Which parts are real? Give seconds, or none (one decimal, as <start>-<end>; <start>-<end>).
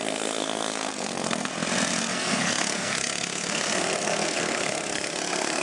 1.5-2.0